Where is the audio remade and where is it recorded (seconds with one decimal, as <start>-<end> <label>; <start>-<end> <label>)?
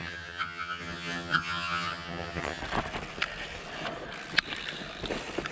0.0-2.6 remade; 2.6-5.5 recorded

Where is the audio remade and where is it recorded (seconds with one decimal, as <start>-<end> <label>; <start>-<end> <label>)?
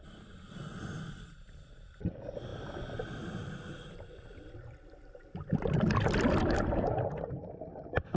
0.0-8.2 recorded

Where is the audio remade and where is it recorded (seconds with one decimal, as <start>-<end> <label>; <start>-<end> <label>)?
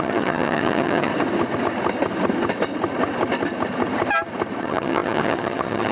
0.0-1.1 remade; 1.1-4.6 recorded; 4.6-5.9 remade